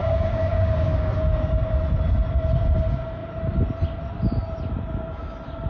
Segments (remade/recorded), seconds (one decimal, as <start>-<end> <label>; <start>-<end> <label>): 0.0-1.7 remade; 1.7-5.7 recorded